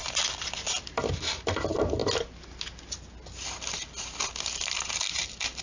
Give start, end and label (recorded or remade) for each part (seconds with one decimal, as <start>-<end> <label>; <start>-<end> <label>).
0.0-5.6 recorded